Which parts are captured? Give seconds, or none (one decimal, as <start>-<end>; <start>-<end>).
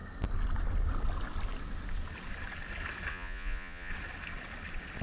0.0-3.1; 3.9-5.0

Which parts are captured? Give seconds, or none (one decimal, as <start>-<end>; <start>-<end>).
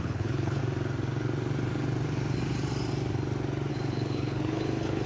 0.6-3.7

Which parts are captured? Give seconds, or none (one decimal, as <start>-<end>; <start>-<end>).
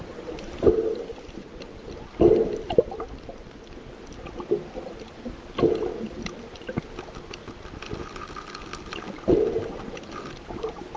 0.0-11.0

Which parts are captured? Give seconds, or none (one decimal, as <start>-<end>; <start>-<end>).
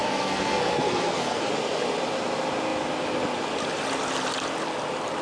1.5-5.2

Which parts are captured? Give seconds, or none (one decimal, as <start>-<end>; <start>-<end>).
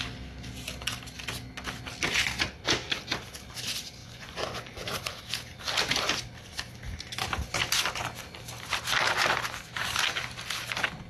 0.0-4.0; 5.2-11.1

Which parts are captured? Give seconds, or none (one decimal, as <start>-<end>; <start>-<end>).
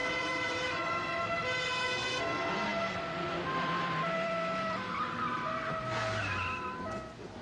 0.9-2.7; 5.7-7.4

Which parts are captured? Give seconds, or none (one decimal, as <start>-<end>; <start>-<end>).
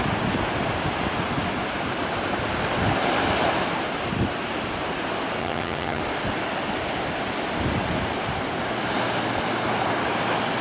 0.0-5.4; 6.0-10.6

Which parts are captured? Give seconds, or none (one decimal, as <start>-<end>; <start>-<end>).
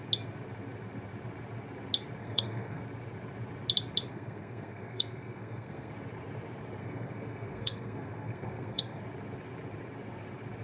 0.0-2.2; 2.8-4.1; 5.9-6.8; 9.0-10.6